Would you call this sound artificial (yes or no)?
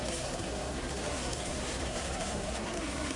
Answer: yes